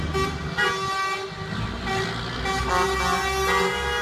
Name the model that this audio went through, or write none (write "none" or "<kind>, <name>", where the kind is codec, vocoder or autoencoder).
none